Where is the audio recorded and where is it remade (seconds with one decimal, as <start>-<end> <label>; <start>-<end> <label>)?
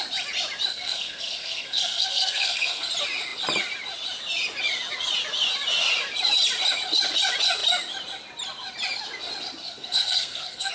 0.0-0.7 recorded; 0.7-2.9 remade; 2.9-9.6 recorded; 9.6-10.7 remade